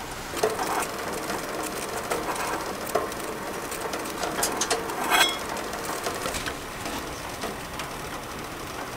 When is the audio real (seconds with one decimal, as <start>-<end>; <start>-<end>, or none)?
0.0-9.0